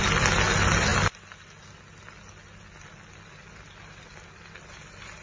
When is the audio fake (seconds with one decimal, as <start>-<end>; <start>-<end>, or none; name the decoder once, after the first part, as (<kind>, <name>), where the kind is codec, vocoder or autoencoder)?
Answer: none